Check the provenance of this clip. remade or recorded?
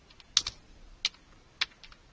recorded